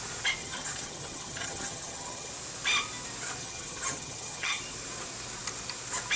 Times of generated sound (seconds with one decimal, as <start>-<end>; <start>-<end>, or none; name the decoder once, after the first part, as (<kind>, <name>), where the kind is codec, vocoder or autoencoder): 0.4-2.3 (vocoder, HiFi-GAN); 3.4-4.6